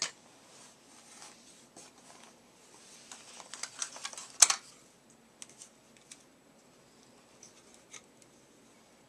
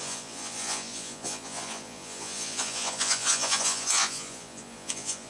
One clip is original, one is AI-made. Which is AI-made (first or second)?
second